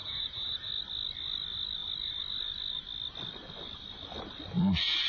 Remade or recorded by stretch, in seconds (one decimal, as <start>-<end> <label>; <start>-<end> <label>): 0.0-0.7 remade; 0.7-5.1 recorded